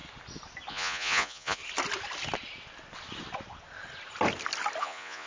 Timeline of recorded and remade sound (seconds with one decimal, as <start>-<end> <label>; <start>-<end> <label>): 0.0-0.7 recorded; 0.7-1.6 remade; 1.6-4.8 recorded; 4.8-5.3 remade